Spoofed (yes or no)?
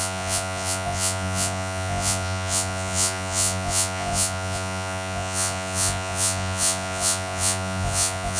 yes